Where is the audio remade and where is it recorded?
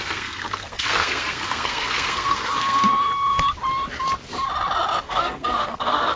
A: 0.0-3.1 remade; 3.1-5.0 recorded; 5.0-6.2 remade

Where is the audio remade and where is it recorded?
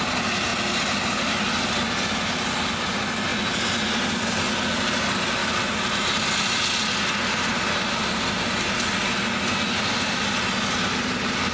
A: 0.0-11.5 recorded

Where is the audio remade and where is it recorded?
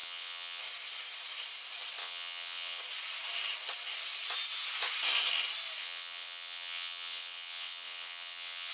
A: 0.0-0.6 remade; 0.6-2.0 recorded; 2.0-2.8 remade; 2.8-5.8 recorded; 5.8-8.7 remade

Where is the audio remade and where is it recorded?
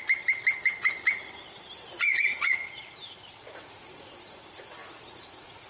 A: 0.0-2.1 recorded; 2.1-5.7 remade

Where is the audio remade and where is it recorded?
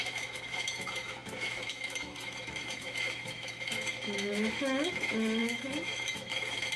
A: 0.0-6.8 remade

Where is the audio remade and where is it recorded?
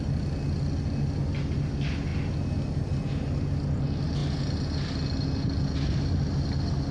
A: 0.0-6.9 recorded